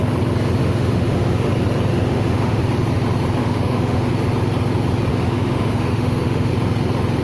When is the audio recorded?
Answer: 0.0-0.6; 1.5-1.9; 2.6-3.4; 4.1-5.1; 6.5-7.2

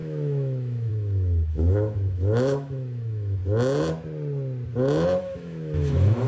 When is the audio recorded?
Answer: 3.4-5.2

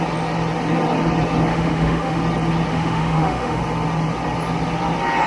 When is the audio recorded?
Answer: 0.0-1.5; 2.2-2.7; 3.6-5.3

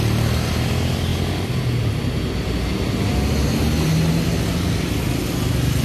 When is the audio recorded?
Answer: 0.0-5.8

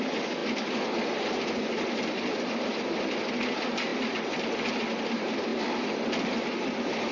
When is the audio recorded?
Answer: 0.0-7.1